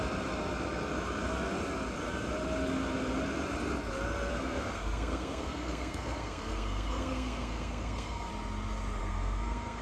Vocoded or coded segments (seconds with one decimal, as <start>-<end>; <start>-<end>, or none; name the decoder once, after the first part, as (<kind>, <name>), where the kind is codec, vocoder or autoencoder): 4.3-8.3 (codec, SNAC); 9.0-9.8